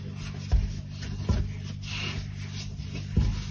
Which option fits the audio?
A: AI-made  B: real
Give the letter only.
B